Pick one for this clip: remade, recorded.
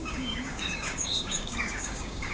remade